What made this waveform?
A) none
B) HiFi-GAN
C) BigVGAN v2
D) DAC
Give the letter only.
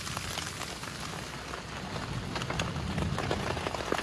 A